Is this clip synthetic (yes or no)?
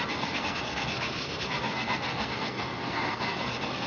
yes